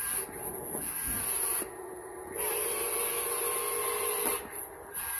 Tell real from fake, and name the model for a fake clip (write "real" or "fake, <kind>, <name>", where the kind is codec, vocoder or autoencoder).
real